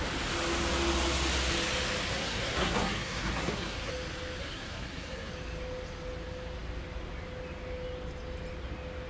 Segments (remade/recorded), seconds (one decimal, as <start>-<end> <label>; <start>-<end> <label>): 0.0-2.1 recorded; 2.1-3.9 remade; 3.9-4.4 recorded; 4.4-5.3 remade; 5.3-9.1 recorded